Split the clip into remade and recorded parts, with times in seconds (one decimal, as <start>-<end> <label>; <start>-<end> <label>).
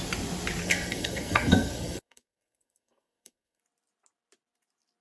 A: 0.0-0.6 recorded; 0.6-3.6 remade; 3.6-5.0 recorded